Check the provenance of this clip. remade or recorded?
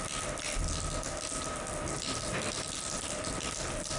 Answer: recorded